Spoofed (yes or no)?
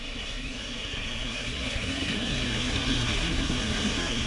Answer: yes